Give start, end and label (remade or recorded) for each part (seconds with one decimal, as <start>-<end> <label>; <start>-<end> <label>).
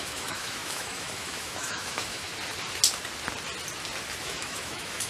0.0-2.3 remade; 2.3-4.2 recorded; 4.2-5.1 remade